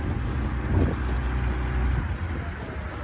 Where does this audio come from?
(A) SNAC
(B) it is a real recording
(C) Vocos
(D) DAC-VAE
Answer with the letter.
B